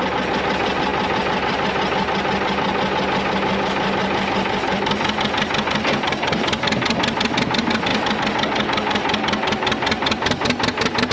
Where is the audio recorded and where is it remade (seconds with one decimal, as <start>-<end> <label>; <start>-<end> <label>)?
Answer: 0.0-11.1 recorded

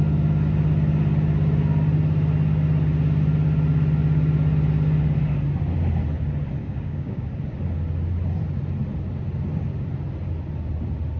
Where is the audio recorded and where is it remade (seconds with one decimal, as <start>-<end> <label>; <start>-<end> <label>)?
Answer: 0.0-6.6 recorded; 6.6-7.3 remade; 7.3-11.2 recorded

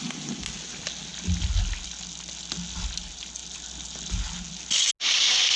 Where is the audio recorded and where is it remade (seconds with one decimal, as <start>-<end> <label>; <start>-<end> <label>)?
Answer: 0.0-5.6 recorded